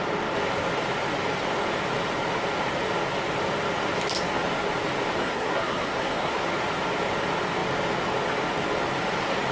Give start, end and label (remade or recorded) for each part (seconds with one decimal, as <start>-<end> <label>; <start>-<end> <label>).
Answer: 0.0-5.2 recorded; 5.2-6.3 remade; 6.3-9.5 recorded

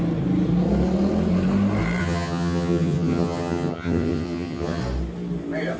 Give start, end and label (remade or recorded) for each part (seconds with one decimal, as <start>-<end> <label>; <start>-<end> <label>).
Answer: 0.0-2.0 recorded; 2.0-4.8 remade; 4.8-5.8 recorded

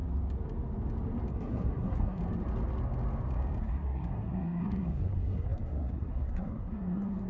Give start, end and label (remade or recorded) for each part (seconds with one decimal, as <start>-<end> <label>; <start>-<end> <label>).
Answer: 0.0-1.3 recorded; 1.3-2.2 remade; 2.2-3.6 recorded; 3.6-7.3 remade

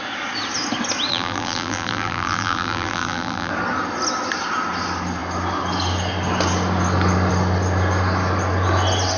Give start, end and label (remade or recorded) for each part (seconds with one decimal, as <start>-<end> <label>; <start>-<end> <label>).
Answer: 0.0-1.1 recorded; 1.1-3.5 remade; 3.5-9.2 recorded